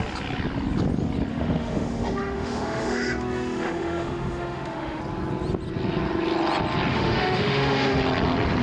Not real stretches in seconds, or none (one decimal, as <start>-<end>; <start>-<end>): 1.3-5.0; 6.9-8.0